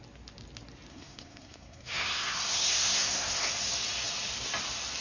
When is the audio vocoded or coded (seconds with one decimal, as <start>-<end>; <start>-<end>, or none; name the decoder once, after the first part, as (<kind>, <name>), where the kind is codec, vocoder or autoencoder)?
0.9-3.5 (codec, SNAC)